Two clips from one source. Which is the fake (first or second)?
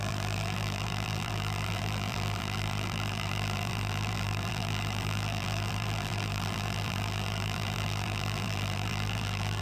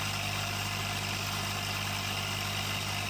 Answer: first